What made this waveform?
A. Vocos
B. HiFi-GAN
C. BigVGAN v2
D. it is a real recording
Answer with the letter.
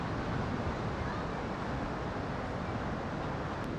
D